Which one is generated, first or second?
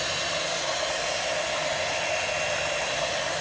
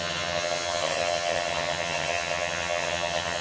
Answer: second